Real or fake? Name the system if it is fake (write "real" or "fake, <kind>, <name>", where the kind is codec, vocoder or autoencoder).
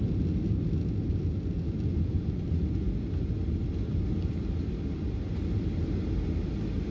real